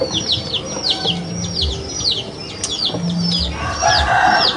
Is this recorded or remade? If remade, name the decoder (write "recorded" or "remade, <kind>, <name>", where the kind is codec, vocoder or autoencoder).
recorded